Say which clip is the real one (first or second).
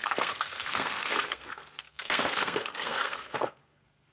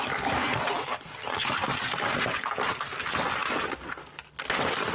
second